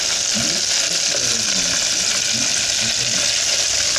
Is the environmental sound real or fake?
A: real